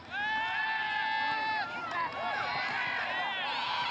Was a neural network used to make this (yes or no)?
no